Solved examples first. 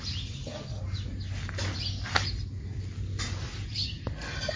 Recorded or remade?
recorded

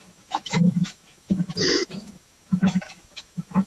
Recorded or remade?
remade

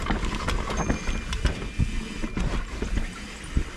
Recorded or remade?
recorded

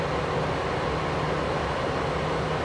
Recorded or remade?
recorded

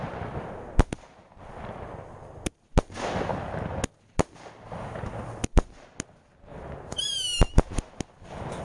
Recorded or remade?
recorded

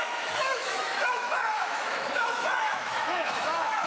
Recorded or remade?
remade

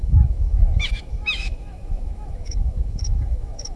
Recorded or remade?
remade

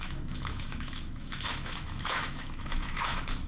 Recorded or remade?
remade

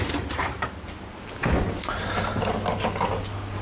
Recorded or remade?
recorded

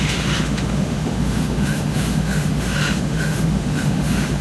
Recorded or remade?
remade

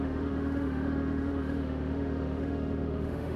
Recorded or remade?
remade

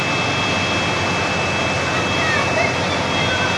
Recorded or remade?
recorded